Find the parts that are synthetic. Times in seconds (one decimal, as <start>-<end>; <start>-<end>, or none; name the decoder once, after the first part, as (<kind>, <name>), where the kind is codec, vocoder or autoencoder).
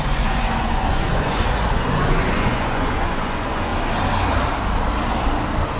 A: 0.0-3.7 (vocoder, Vocos)